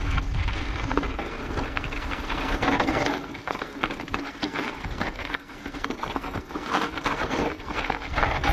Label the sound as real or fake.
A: fake